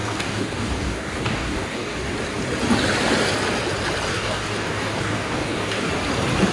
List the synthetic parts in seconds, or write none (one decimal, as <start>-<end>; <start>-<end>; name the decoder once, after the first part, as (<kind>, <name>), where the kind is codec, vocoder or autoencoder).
0.0-2.1 (codec, DAC); 4.1-5.9